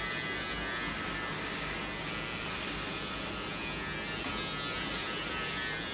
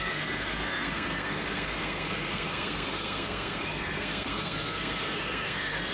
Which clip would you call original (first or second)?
first